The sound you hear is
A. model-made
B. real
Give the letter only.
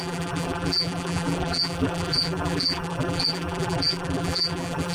A